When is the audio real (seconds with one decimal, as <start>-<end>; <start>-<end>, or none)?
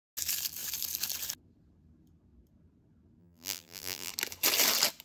0.0-3.2; 4.1-5.0